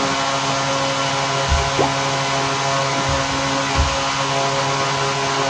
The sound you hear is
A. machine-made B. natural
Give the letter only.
B